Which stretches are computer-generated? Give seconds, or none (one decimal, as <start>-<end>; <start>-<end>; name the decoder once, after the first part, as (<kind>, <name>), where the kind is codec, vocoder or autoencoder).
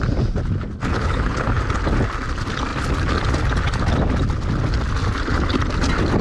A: 0.9-1.6 (codec, HILCodec)